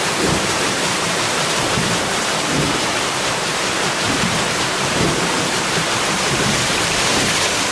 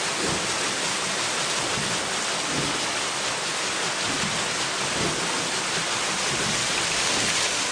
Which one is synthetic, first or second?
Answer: first